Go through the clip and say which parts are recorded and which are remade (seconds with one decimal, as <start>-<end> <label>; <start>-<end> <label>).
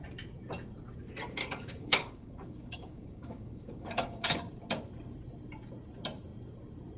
0.0-1.4 recorded; 1.4-4.4 remade; 4.4-7.0 recorded